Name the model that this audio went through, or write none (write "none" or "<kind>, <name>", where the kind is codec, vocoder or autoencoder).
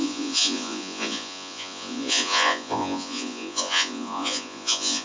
vocoder, Vocos